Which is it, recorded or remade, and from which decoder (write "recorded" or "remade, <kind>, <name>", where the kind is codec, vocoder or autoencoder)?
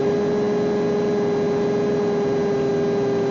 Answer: recorded